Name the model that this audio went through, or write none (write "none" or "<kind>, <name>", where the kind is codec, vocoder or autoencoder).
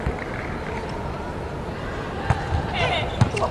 none